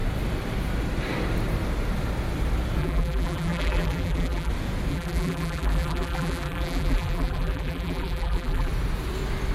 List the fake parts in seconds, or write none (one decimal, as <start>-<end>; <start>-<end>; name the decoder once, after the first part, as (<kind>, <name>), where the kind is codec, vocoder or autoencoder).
2.8-4.5 (vocoder, BigVGAN v2); 4.9-8.7